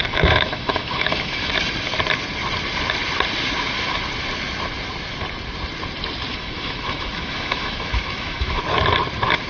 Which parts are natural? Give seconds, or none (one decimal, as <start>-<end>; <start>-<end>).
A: 1.5-6.3; 8.6-9.5